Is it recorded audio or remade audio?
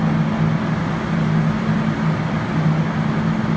recorded